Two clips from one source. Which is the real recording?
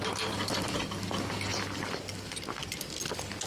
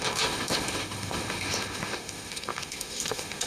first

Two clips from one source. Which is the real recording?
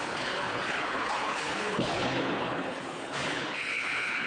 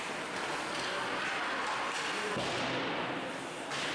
second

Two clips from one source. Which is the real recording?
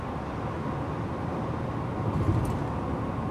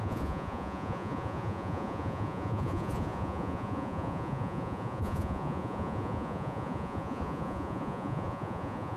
first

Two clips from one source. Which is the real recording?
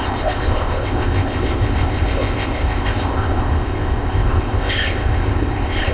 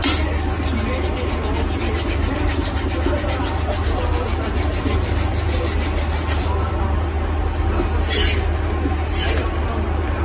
second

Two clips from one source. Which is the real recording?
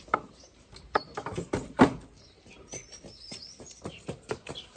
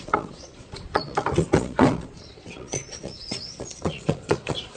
first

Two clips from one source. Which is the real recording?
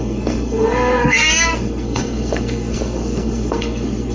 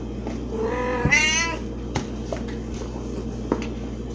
second